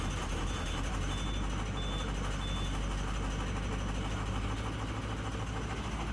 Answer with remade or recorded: recorded